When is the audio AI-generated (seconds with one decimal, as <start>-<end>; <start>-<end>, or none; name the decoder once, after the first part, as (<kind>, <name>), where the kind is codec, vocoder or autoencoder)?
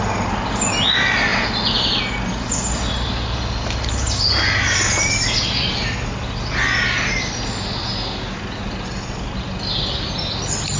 none